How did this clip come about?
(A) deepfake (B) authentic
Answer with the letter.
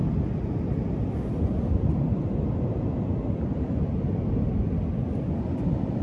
B